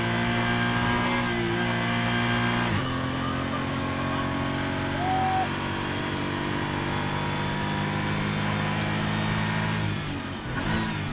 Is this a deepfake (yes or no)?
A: no